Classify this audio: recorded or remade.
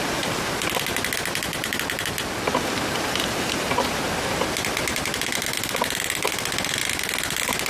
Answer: recorded